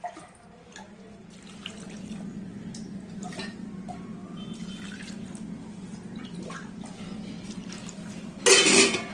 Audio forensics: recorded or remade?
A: recorded